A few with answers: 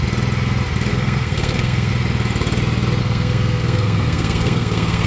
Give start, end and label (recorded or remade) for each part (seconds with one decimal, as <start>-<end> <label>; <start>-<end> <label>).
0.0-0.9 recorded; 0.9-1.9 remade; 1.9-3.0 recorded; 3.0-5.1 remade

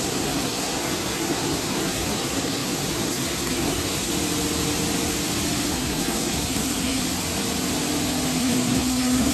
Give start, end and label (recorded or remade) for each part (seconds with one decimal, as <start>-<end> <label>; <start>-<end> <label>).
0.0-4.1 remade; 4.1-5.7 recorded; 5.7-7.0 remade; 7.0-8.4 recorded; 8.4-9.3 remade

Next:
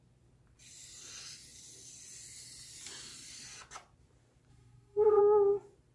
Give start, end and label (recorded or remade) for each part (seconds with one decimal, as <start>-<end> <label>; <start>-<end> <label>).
0.0-4.5 recorded; 4.5-5.2 remade; 5.2-5.9 recorded

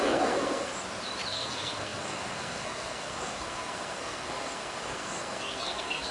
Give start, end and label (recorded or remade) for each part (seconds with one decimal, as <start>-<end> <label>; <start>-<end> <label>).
0.0-0.7 remade; 0.7-1.3 recorded; 1.3-6.1 remade